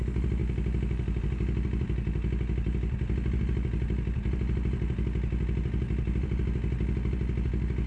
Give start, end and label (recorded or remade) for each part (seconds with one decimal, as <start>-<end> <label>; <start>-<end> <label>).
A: 0.0-7.9 recorded